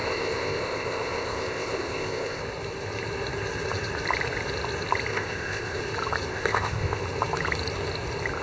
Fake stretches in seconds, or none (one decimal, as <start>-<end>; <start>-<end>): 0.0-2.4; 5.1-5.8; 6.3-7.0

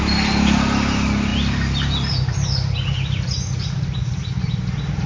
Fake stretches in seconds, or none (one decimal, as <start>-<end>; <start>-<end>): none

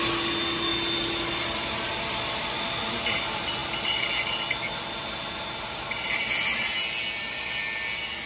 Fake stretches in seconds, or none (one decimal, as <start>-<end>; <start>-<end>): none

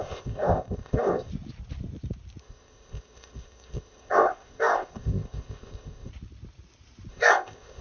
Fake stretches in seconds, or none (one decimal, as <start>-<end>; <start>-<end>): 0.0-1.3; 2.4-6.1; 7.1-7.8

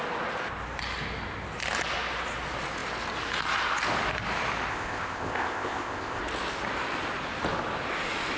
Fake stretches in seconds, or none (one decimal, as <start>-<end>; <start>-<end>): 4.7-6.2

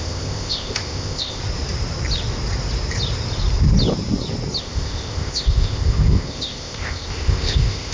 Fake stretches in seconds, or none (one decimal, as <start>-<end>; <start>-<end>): 0.0-1.4; 4.6-7.9